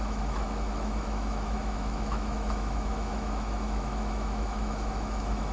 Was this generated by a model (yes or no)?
yes